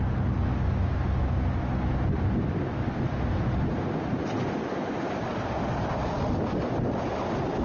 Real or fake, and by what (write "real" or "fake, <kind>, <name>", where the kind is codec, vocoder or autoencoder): real